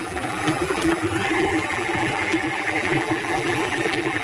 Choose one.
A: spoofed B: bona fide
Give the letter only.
A